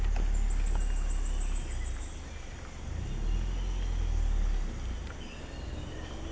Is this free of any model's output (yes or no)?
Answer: yes